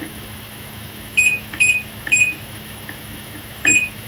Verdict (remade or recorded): remade